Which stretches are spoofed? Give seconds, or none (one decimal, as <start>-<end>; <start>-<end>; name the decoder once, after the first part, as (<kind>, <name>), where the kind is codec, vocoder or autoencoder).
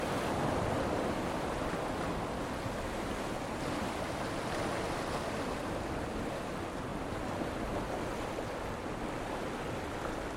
none